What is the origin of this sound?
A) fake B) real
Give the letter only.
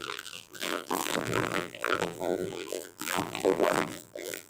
A